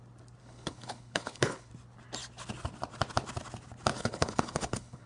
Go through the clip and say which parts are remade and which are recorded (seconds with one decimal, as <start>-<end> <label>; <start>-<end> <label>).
0.0-0.4 recorded; 0.4-1.7 remade; 1.7-3.9 recorded; 3.9-5.1 remade